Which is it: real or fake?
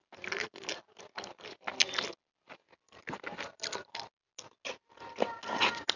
real